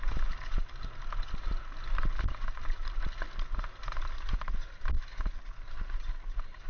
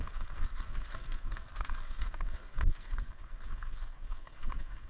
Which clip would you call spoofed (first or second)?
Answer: second